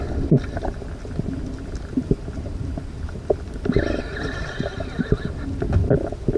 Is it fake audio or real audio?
real